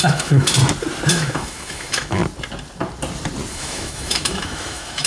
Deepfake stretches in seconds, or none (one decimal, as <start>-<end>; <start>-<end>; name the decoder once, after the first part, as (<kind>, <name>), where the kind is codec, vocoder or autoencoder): 0.0-0.6 (autoencoder, DAC-VAE); 1.1-2.2; 3.5-5.1